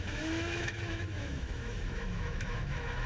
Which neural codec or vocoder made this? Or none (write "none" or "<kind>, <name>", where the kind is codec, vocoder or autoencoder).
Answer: autoencoder, DAC-VAE